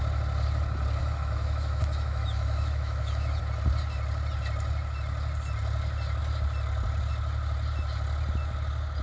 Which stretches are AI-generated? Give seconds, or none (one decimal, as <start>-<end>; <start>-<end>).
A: 1.0-3.4